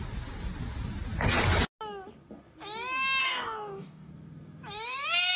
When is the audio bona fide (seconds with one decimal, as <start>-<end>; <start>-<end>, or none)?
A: 0.0-3.2; 4.1-5.4